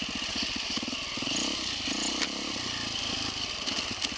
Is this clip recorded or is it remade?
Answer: recorded